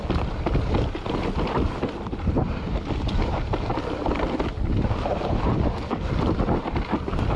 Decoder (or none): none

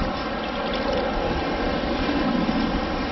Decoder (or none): none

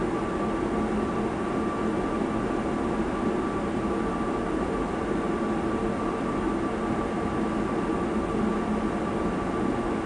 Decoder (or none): none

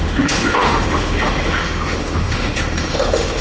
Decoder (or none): autoencoder, DAC-VAE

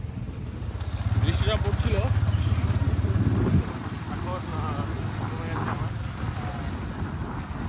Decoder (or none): none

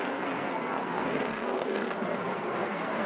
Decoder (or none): codec, SNAC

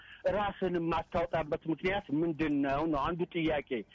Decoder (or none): none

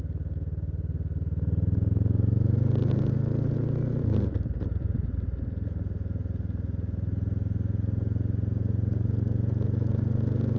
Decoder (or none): none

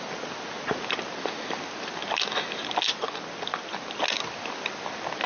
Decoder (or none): none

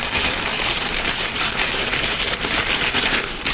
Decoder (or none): vocoder, BigVGAN v2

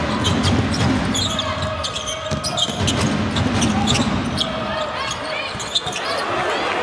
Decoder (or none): none